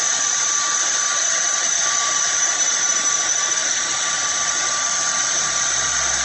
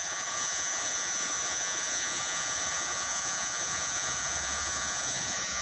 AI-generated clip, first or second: second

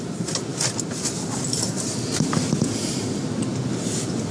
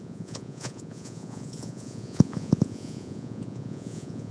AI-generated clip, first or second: second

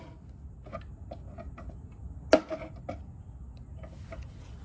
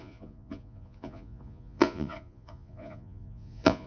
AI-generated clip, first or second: second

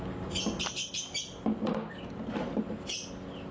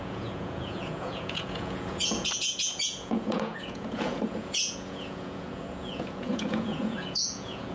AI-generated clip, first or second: second